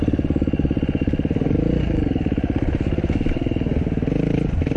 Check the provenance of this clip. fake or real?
real